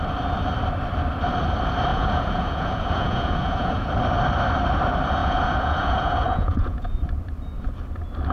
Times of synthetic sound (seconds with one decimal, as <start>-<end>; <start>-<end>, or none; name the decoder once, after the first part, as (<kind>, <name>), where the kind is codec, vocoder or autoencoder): 1.9-3.9 (vocoder, Vocos); 5.2-6.9